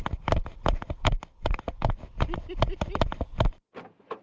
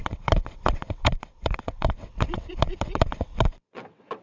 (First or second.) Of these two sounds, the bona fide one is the first